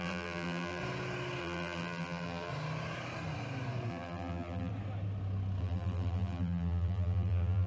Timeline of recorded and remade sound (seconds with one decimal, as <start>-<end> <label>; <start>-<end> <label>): 0.0-0.8 remade; 0.8-1.4 recorded; 1.4-2.5 remade; 2.5-3.9 recorded; 3.9-4.7 remade; 4.7-5.6 recorded; 5.6-7.7 remade